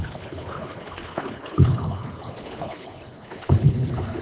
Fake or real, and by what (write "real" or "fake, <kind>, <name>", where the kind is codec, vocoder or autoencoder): fake, codec, HILCodec